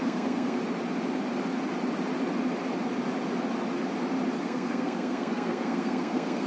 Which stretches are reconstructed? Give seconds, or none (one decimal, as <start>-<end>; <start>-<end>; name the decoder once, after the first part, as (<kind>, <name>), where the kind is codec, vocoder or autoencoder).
0.0-0.6 (codec, SNAC); 4.4-6.5